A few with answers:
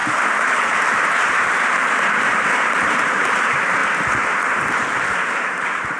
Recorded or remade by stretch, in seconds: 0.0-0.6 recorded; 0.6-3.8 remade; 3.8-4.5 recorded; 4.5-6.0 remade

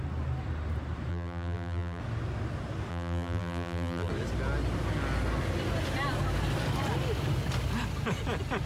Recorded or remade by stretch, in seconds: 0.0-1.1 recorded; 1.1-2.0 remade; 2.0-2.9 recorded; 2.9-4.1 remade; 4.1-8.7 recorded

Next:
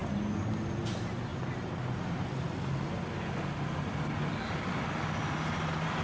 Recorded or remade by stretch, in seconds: 0.0-6.0 recorded

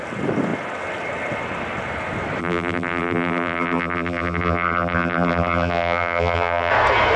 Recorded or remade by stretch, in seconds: 0.0-2.4 recorded; 2.4-6.7 remade; 6.7-7.2 recorded

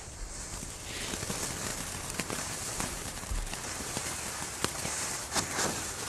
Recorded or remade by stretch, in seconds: 0.0-1.7 recorded; 1.7-5.4 remade; 5.4-6.1 recorded